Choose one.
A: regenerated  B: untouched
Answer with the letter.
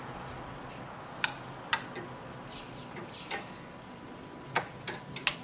B